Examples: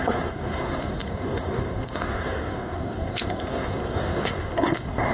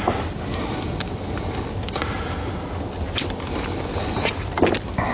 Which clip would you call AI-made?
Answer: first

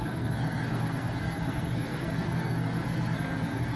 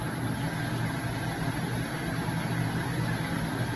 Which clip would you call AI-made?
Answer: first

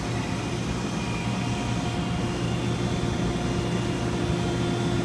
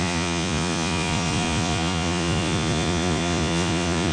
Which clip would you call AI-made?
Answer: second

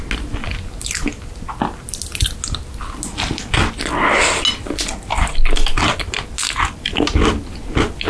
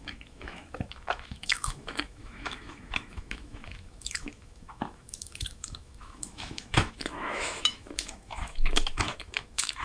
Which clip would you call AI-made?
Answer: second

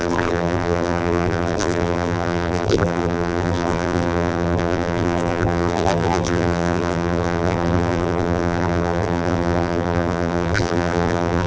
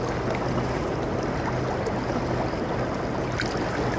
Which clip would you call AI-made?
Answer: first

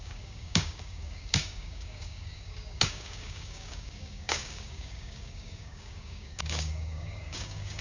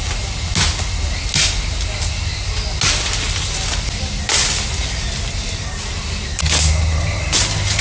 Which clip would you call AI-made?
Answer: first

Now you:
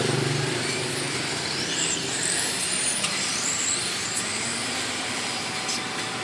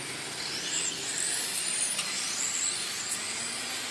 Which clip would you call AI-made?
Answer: first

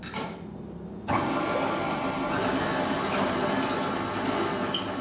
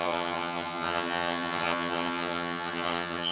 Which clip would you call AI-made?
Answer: second